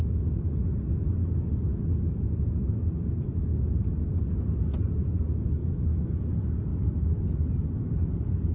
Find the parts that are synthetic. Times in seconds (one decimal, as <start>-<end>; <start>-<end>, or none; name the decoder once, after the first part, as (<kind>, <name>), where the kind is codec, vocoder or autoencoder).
5.6-6.1 (autoencoder, DAC-VAE)